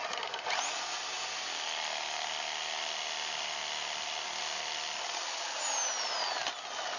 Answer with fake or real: real